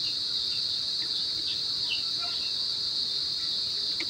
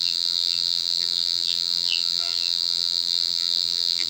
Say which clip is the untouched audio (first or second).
first